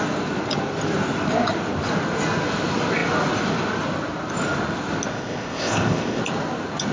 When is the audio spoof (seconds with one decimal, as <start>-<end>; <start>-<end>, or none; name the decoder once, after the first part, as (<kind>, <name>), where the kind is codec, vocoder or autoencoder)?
5.1-6.2 (codec, ZipCodec)